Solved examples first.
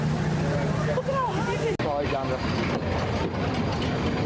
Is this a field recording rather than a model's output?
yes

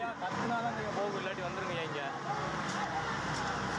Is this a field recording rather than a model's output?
yes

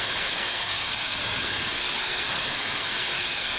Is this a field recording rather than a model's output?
no